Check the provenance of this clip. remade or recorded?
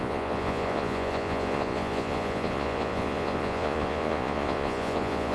remade